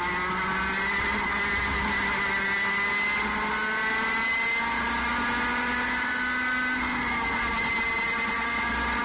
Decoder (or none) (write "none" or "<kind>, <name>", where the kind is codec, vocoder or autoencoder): none